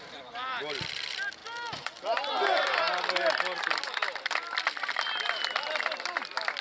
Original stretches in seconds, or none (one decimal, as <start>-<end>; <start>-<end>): 0.0-6.6